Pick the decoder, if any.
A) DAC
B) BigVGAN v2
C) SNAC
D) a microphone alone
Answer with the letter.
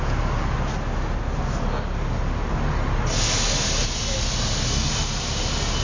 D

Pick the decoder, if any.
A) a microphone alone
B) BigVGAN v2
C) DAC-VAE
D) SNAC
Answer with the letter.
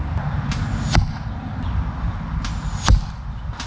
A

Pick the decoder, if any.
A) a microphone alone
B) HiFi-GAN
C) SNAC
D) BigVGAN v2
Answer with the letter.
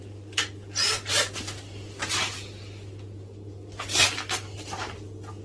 A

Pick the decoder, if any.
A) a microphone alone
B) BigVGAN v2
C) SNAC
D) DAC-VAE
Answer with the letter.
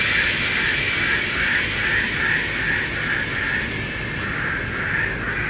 A